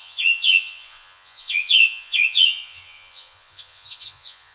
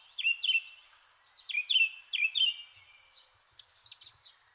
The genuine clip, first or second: second